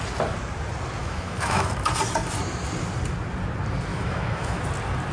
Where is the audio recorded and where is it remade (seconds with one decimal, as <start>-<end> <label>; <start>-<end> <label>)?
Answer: 0.0-1.0 recorded; 1.0-1.7 remade; 1.7-3.9 recorded; 3.9-4.6 remade; 4.6-5.1 recorded